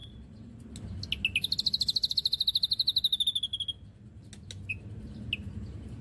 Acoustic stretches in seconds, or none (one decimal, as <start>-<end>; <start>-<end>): 0.5-6.0